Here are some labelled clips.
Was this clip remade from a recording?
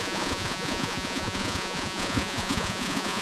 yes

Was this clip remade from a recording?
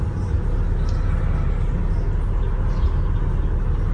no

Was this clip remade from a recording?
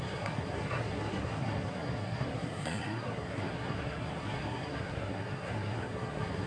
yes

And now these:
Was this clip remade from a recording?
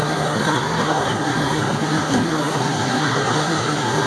yes